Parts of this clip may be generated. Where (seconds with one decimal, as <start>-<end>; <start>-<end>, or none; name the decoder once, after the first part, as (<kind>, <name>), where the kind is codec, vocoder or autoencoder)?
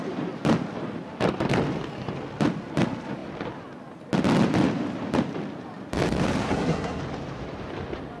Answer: 6.5-7.0 (codec, SNAC)